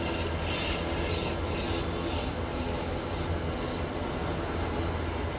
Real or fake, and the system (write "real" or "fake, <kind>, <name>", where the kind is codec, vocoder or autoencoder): real